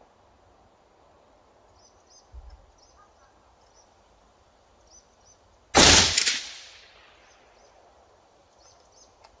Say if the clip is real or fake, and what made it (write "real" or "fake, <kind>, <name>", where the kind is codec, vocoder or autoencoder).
real